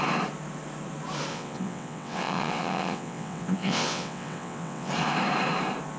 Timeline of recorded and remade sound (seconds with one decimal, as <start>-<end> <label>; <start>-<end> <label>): 0.0-1.3 recorded; 1.3-4.9 remade; 4.9-6.0 recorded